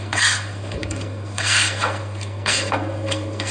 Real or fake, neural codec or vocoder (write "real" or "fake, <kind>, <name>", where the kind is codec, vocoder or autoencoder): fake, codec, SNAC